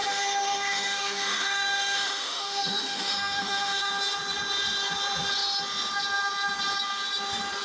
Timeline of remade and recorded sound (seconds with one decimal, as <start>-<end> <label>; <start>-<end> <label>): 0.0-3.9 remade; 3.9-7.6 recorded